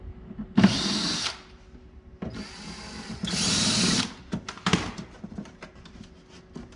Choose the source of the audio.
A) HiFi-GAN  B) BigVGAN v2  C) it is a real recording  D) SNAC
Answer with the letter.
C